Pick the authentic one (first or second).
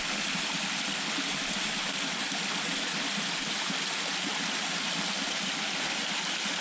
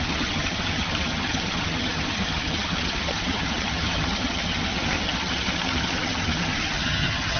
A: first